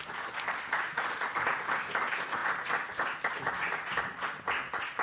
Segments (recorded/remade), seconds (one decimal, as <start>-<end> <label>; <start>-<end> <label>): 0.0-5.0 recorded